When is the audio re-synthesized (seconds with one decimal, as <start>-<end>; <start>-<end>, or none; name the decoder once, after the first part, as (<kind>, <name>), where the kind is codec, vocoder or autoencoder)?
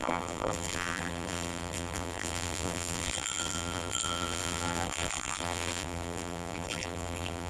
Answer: 0.0-7.5 (vocoder, BigVGAN v2)